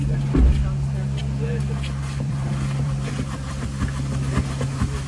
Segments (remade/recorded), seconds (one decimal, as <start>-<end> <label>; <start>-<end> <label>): 0.0-1.2 recorded; 1.2-3.6 remade; 3.6-5.1 recorded